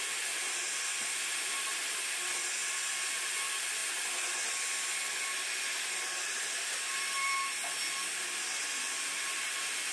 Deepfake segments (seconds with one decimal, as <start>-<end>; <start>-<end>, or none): 2.6-3.2; 6.9-8.0